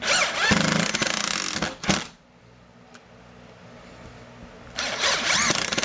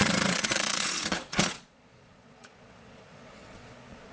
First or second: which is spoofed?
second